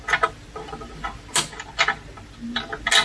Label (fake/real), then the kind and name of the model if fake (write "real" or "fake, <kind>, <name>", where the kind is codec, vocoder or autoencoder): real